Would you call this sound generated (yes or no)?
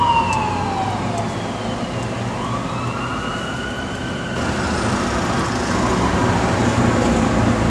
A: no